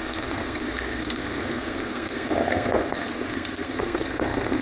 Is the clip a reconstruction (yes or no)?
yes